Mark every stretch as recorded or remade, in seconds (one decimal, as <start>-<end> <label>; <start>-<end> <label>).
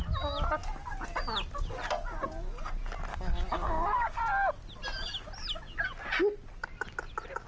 0.0-3.1 recorded; 3.1-4.2 remade; 4.2-7.5 recorded